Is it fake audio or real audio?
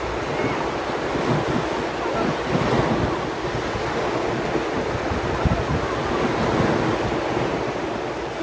real